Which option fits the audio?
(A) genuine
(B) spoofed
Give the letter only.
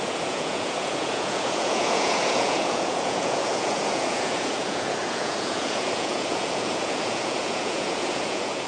B